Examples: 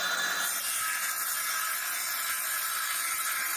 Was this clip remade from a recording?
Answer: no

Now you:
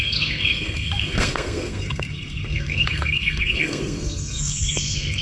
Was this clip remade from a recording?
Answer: yes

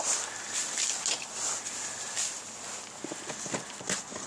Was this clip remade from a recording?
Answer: no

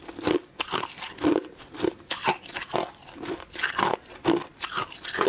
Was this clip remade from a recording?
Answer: no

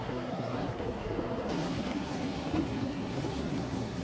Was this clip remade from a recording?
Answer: yes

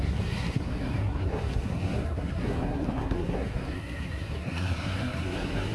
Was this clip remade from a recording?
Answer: yes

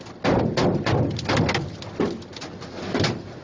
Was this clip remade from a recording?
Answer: no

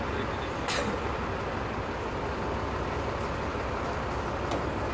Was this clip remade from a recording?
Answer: no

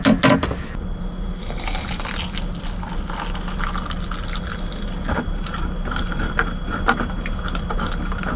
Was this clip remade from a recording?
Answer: no